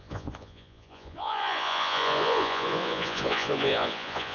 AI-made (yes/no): yes